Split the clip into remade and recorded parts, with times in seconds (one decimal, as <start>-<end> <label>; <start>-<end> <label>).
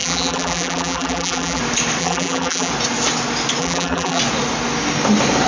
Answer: 0.0-1.6 remade; 1.6-2.0 recorded; 2.0-2.7 remade; 2.7-3.6 recorded; 3.6-4.2 remade; 4.2-5.5 recorded